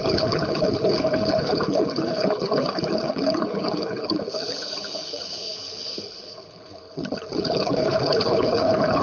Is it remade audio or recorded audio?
remade